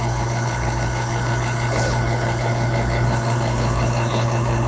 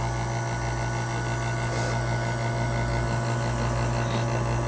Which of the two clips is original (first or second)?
second